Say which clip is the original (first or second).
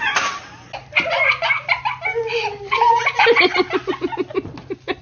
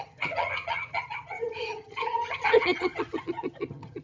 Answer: first